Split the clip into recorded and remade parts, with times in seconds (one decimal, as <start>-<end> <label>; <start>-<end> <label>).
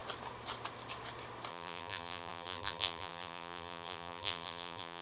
0.0-1.5 recorded; 1.5-5.0 remade